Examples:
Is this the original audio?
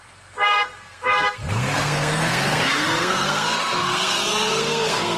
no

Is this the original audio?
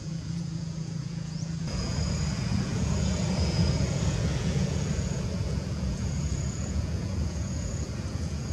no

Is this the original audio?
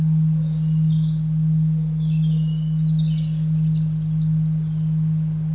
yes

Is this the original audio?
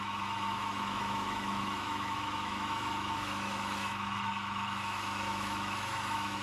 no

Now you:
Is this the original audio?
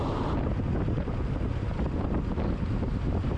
yes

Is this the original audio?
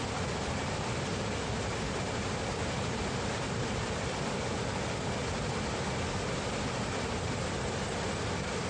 yes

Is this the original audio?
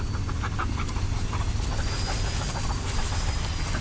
yes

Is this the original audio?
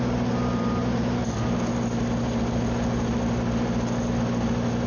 yes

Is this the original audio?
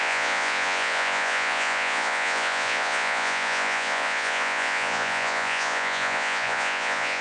no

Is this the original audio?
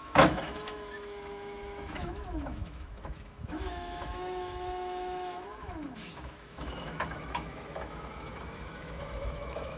no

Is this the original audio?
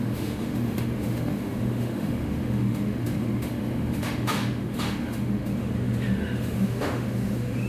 no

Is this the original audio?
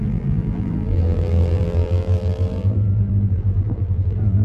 no